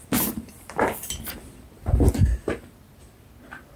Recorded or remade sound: recorded